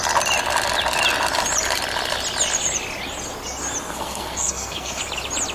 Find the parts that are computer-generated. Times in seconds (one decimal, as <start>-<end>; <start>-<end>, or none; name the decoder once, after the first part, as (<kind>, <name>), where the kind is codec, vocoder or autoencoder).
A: 3.9-5.0 (codec, SNAC)